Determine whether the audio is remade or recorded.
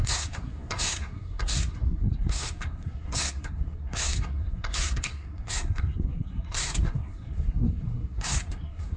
remade